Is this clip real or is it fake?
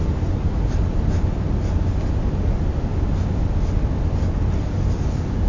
real